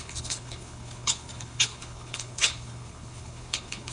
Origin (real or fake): fake